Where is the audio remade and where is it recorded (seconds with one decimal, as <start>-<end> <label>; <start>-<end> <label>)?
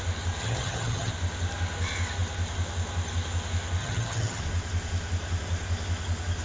0.0-0.4 recorded; 0.4-1.1 remade; 1.1-3.8 recorded; 3.8-4.4 remade; 4.4-6.4 recorded